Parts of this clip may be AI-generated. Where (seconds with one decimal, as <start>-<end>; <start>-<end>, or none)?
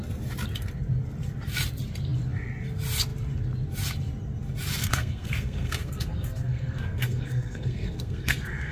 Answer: 4.8-8.7